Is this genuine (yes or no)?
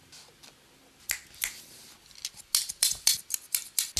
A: yes